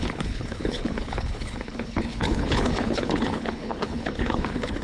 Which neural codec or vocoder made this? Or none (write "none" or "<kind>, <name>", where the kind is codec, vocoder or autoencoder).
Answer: codec, HILCodec